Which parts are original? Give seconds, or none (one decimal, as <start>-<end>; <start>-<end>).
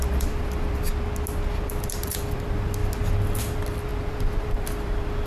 0.9-1.5; 2.8-3.4